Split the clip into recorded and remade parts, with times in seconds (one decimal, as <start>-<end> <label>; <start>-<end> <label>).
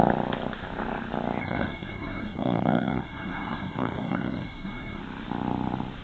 0.0-1.4 recorded; 1.4-5.0 remade; 5.0-6.0 recorded